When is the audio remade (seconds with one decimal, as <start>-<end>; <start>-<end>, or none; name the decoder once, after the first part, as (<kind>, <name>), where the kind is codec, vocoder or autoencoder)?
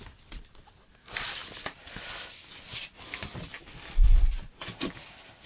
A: none